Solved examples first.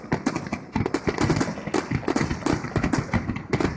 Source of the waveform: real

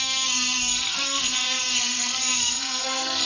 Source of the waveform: fake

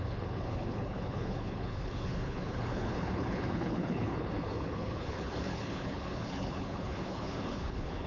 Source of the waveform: fake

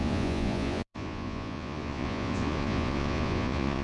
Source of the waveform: fake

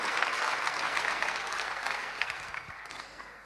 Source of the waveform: fake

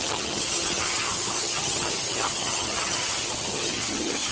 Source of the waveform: fake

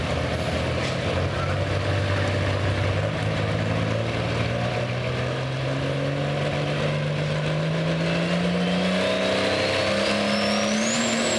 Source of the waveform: real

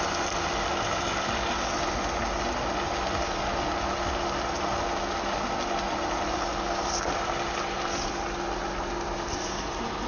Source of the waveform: real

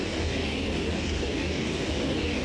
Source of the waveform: fake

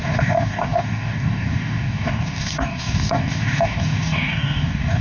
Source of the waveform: fake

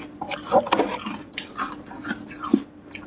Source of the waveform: real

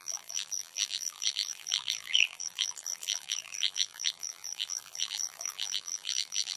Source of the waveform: fake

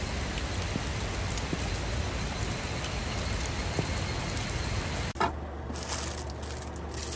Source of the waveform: real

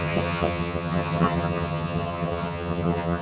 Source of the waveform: fake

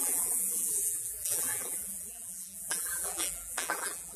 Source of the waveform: fake